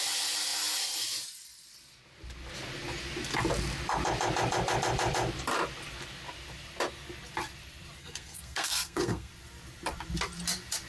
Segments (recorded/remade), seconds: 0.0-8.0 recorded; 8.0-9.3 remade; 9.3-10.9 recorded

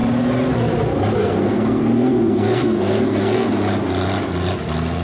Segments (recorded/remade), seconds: 0.0-1.2 recorded; 1.2-3.5 remade; 3.5-5.0 recorded

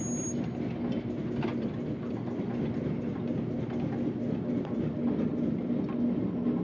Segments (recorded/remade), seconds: 0.0-6.6 recorded

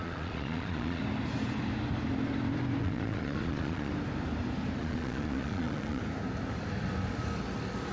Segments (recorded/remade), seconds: 0.0-1.0 remade; 1.0-2.8 recorded; 2.8-3.9 remade; 3.9-4.8 recorded; 4.8-6.0 remade; 6.0-7.9 recorded

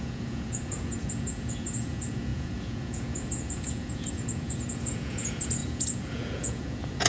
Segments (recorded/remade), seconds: 0.0-7.1 remade

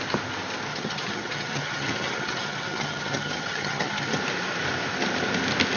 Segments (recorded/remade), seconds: 0.0-0.7 recorded; 0.7-4.2 remade; 4.2-5.8 recorded